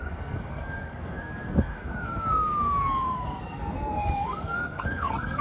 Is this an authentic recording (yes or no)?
no